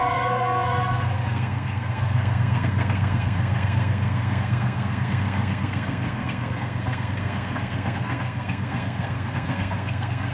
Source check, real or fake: fake